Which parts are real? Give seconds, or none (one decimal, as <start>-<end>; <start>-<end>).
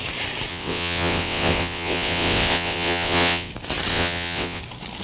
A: 0.0-0.5; 3.5-3.9; 4.6-5.0